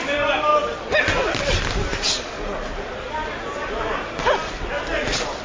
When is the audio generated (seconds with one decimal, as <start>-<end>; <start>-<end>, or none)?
none